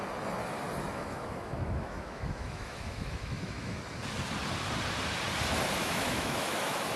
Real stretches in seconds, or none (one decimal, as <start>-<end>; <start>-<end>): 0.0-0.9; 3.8-5.8